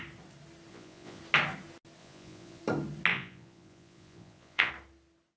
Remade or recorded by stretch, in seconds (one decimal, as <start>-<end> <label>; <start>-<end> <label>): 0.0-0.7 recorded; 0.7-1.2 remade; 1.2-2.0 recorded; 2.0-2.6 remade; 2.6-3.1 recorded; 3.1-4.7 remade; 4.7-5.4 recorded